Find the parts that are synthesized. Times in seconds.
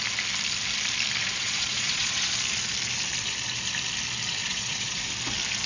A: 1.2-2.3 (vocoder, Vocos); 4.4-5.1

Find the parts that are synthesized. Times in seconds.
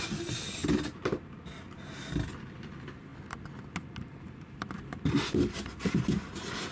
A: none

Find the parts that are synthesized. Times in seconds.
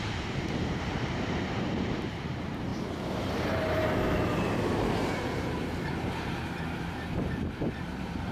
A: 0.0-8.3 (vocoder, BigVGAN v2)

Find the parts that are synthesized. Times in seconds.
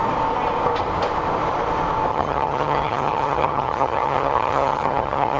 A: 2.1-5.4 (vocoder, HiFi-GAN)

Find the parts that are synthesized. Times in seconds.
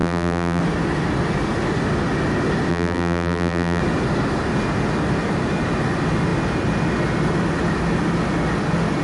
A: 0.0-0.6 (vocoder, BigVGAN v2); 2.7-3.8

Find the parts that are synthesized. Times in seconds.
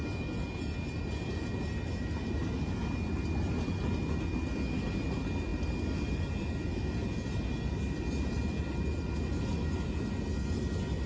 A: none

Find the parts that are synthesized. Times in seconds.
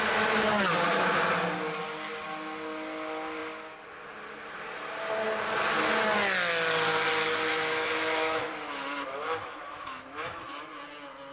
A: 7.5-8.5 (autoencoder, DAC-VAE); 9.4-10.6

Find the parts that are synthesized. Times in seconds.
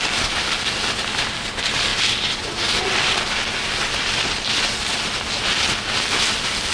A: none